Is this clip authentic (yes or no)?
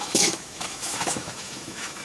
no